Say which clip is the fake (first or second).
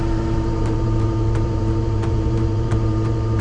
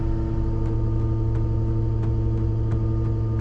first